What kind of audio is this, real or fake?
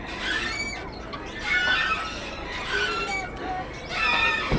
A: real